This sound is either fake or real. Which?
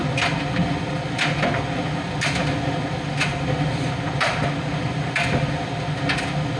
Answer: real